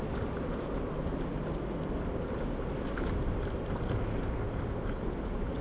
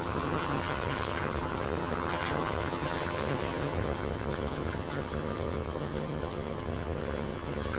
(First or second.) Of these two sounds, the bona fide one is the first